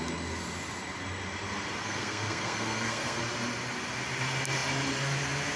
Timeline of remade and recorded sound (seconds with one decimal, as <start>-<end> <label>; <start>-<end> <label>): 0.0-1.8 recorded; 1.8-3.2 remade; 3.2-5.6 recorded